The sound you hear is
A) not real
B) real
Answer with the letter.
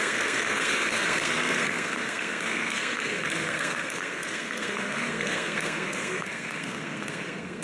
A